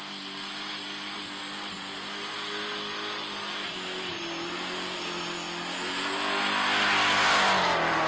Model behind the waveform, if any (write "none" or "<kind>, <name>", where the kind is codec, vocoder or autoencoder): none